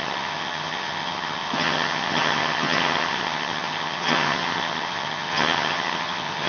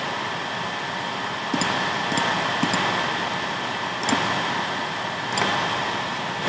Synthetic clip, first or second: first